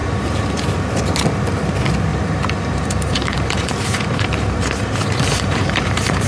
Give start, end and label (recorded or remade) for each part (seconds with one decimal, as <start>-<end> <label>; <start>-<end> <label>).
0.0-0.6 remade; 0.6-2.1 recorded; 2.1-6.3 remade

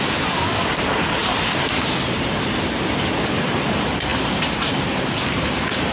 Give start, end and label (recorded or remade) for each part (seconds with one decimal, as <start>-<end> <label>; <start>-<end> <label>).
0.0-4.1 recorded; 4.1-5.1 remade; 5.1-5.9 recorded

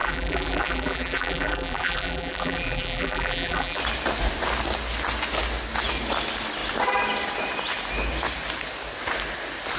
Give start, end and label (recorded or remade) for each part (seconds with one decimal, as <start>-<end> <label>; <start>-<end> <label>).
0.0-3.8 remade; 3.8-9.8 recorded